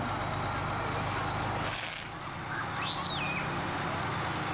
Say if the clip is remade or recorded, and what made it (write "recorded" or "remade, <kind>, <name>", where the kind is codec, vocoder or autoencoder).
recorded